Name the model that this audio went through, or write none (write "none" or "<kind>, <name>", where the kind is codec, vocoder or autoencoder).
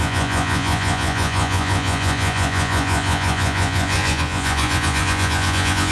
vocoder, Vocos